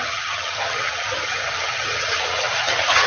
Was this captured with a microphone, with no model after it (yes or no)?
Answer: no